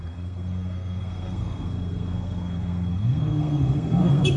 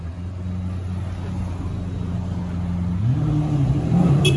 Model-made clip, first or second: first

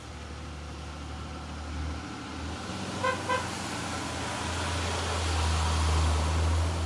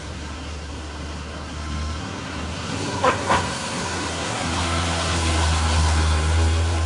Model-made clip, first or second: second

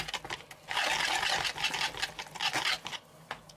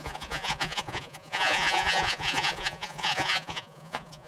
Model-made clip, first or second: second